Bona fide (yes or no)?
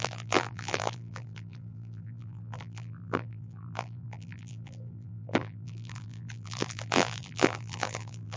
no